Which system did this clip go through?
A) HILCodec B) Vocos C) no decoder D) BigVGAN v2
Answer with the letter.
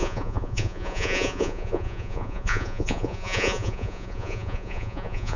B